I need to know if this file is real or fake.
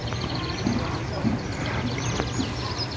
real